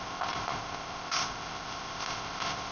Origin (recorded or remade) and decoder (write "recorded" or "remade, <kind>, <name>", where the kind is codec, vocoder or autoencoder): remade, codec, ZipCodec